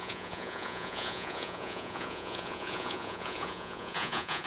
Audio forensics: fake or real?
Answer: fake